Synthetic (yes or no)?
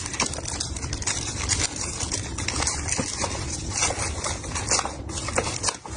no